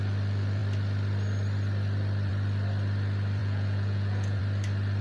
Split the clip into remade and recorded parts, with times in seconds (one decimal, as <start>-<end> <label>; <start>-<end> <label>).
0.0-3.4 recorded; 3.4-4.4 remade; 4.4-5.0 recorded